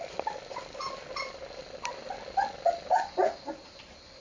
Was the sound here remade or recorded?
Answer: recorded